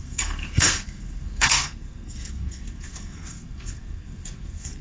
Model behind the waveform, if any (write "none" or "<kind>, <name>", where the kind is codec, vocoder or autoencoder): codec, SNAC